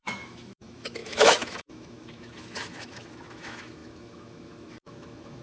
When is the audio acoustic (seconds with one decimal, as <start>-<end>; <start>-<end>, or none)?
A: none